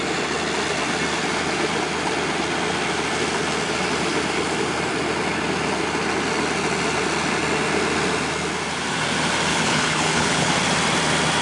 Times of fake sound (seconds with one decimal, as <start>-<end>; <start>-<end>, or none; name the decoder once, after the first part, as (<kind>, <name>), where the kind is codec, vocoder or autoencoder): 9.5-10.5 (codec, HILCodec)